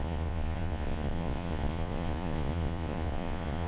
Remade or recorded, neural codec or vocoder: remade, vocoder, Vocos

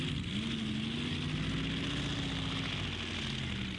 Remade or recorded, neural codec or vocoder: recorded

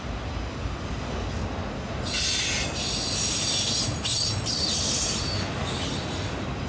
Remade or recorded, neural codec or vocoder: recorded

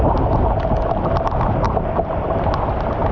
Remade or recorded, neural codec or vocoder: recorded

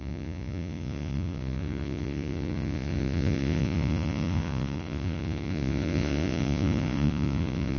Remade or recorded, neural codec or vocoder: remade, vocoder, Vocos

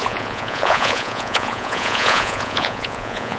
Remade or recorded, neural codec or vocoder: remade, vocoder, Vocos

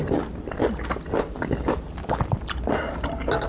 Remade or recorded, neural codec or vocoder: recorded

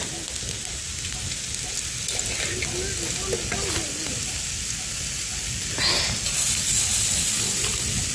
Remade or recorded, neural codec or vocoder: recorded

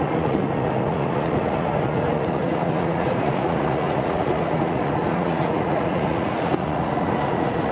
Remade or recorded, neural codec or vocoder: remade, vocoder, Vocos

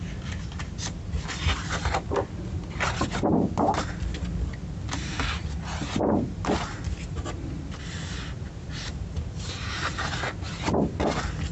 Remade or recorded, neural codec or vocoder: recorded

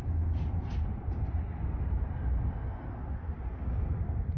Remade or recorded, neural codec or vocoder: recorded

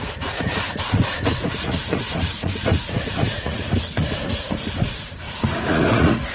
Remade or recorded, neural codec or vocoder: remade, vocoder, Vocos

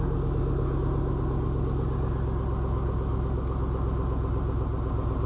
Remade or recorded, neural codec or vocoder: recorded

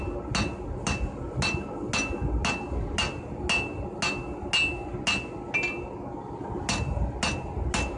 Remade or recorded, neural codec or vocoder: recorded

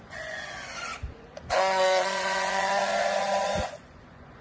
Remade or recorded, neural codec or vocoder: remade, vocoder, Vocos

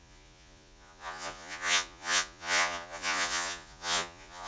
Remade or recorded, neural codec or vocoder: remade, vocoder, Vocos